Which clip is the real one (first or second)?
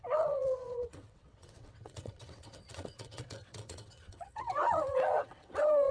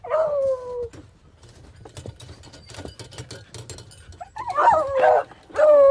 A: second